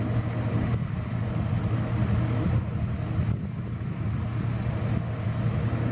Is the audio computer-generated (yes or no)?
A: no